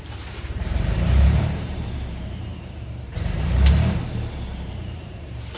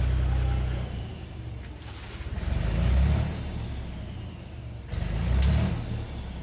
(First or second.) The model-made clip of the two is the first